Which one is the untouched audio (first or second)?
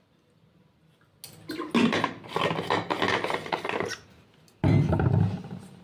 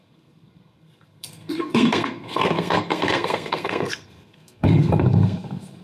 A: first